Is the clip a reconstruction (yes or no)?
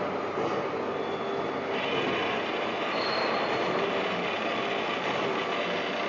no